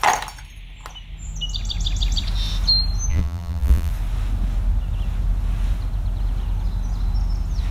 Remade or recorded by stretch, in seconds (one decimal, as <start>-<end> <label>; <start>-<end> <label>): 0.0-3.1 recorded; 3.1-3.9 remade; 3.9-7.7 recorded

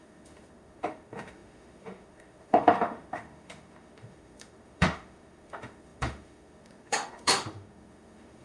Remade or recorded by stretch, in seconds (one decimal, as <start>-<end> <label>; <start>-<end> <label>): 0.0-8.4 remade